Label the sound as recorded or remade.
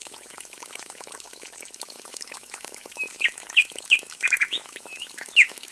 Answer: remade